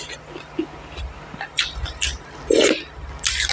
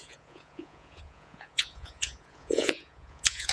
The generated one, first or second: second